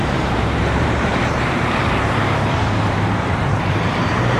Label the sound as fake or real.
fake